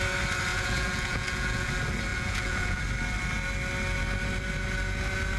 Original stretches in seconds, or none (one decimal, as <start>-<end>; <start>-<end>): 0.0-0.5; 1.7-2.1; 2.8-5.4

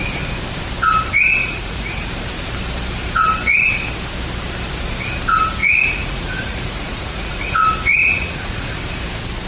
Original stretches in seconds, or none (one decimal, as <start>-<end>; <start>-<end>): 0.0-1.4; 2.1-5.6; 7.5-8.0; 8.8-9.5

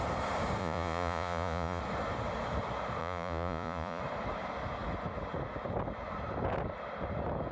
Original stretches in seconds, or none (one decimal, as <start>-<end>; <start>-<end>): 0.0-0.6; 1.8-3.0; 4.0-7.5